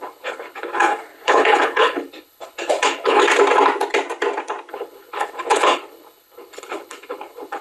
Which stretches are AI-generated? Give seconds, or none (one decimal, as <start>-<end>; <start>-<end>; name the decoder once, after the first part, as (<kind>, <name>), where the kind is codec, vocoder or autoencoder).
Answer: 0.0-3.2 (codec, HILCodec); 4.7-7.6

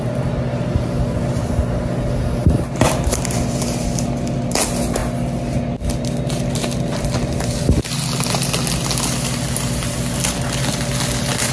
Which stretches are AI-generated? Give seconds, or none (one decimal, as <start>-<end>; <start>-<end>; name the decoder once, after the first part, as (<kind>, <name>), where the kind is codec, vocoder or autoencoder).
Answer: none

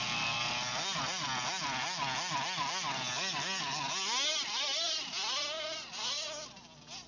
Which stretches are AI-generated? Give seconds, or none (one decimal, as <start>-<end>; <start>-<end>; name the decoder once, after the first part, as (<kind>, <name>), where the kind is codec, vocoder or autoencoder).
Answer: 4.3-5.4 (vocoder, BigVGAN v2)

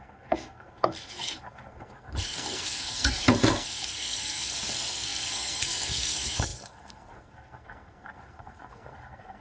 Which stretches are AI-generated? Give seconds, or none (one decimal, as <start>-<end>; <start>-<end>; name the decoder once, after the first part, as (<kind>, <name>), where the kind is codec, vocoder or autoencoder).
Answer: 0.0-9.4 (codec, SNAC)

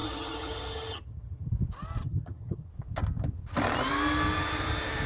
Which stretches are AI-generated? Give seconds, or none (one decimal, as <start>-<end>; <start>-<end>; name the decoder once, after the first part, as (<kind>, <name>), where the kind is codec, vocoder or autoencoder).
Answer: 0.0-1.5 (vocoder, HiFi-GAN); 2.0-2.7

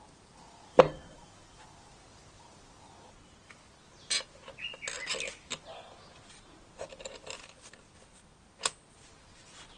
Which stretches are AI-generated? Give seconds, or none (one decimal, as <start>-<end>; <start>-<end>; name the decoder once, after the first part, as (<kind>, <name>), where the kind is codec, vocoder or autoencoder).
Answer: none